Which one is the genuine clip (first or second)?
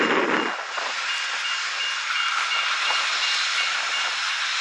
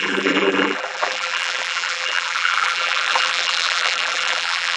first